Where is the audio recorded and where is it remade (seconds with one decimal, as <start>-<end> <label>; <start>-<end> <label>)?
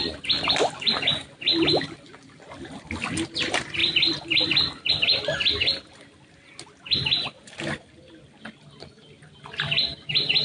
0.0-10.4 recorded